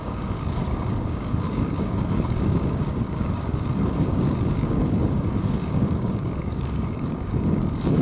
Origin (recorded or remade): remade